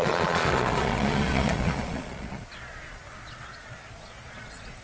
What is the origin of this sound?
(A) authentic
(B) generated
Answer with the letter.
B